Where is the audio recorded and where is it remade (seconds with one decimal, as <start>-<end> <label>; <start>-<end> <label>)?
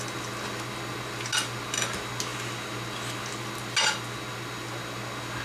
0.0-5.4 recorded